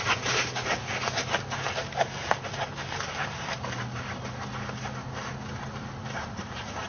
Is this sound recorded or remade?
recorded